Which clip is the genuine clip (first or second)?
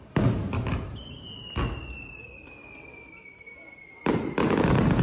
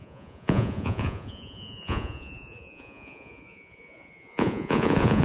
first